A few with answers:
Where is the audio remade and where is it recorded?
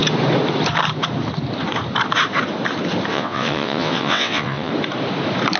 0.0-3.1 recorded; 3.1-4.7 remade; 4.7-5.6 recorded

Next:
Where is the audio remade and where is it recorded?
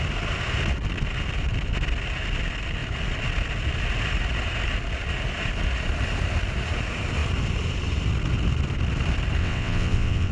0.0-9.4 recorded; 9.4-10.3 remade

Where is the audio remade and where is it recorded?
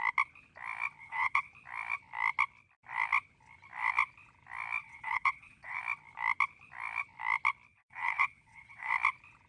0.0-1.0 recorded; 1.0-1.5 remade; 1.5-4.8 recorded; 4.8-5.8 remade; 5.8-7.7 recorded; 7.7-8.9 remade; 8.9-9.5 recorded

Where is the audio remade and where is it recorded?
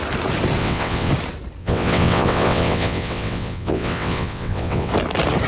0.0-0.6 recorded; 0.6-1.1 remade; 1.1-1.6 recorded; 1.6-4.9 remade; 4.9-5.5 recorded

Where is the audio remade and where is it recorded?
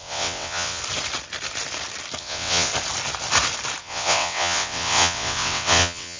0.0-0.8 remade; 0.8-2.2 recorded; 2.2-2.7 remade; 2.7-3.8 recorded; 3.8-6.2 remade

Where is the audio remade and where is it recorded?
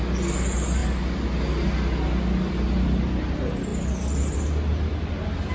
0.0-5.5 recorded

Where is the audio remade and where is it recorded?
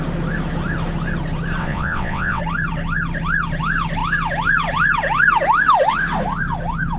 0.0-1.6 recorded; 1.6-2.4 remade; 2.4-7.0 recorded